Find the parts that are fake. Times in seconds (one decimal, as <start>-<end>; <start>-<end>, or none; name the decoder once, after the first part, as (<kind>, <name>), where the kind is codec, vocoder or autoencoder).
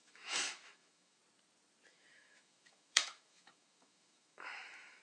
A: 0.0-1.2 (autoencoder, DAC-VAE); 1.9-5.0